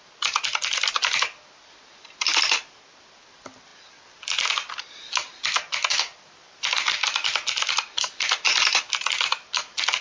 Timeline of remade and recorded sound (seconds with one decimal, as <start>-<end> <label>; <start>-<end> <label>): 0.0-10.0 recorded

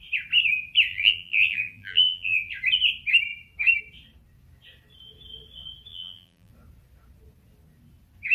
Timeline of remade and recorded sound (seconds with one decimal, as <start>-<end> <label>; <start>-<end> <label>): 0.0-0.9 recorded; 0.9-2.5 remade; 2.5-5.9 recorded; 5.9-6.5 remade; 6.5-8.3 recorded

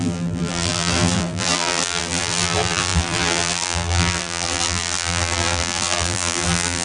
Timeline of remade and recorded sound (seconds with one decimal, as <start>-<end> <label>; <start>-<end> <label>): 0.0-6.8 remade

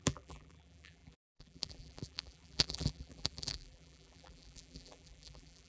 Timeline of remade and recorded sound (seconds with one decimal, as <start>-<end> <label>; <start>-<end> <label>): 0.0-5.7 remade

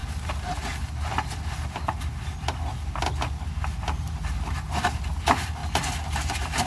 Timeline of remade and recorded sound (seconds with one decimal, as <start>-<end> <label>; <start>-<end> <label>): 0.0-6.7 recorded

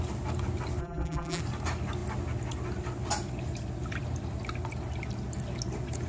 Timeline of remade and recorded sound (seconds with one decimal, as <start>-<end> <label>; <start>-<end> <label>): 0.0-0.8 recorded; 0.8-1.4 remade; 1.4-6.1 recorded

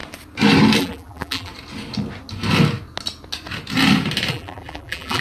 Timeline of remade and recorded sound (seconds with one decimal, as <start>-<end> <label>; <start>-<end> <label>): 0.0-0.8 recorded; 0.8-1.5 remade; 1.5-4.3 recorded; 4.3-5.2 remade

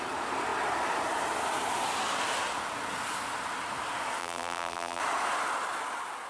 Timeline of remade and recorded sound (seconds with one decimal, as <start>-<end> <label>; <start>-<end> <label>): 0.0-4.2 recorded; 4.2-5.0 remade; 5.0-6.3 recorded